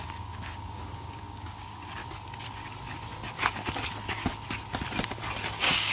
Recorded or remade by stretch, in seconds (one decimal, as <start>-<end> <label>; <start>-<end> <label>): 0.0-2.0 remade; 2.0-5.5 recorded; 5.5-5.9 remade